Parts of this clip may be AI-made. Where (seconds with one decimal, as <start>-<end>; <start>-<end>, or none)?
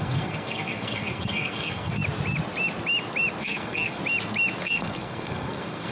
0.0-2.0; 3.4-4.0; 4.6-5.9